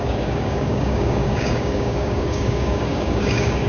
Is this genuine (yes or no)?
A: no